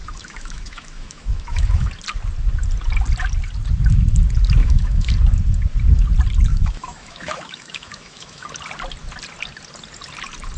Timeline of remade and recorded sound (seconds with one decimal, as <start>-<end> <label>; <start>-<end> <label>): 0.0-1.9 remade; 1.9-4.6 recorded; 4.6-5.1 remade; 5.1-6.5 recorded; 6.5-8.5 remade; 8.5-10.6 recorded